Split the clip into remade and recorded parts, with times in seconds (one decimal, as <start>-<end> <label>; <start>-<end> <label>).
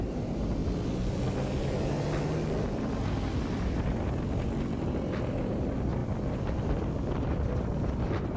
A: 0.0-0.6 recorded; 0.6-1.2 remade; 1.2-8.4 recorded